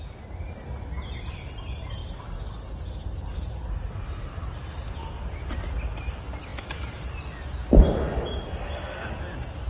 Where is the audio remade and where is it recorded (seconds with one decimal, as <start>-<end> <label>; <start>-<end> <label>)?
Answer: 0.0-2.0 recorded; 2.0-5.7 remade; 5.7-9.7 recorded